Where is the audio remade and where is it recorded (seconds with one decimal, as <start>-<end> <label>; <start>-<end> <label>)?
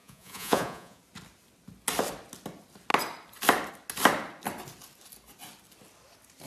0.0-1.0 remade; 1.0-6.5 recorded